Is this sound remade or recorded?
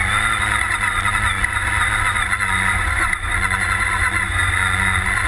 remade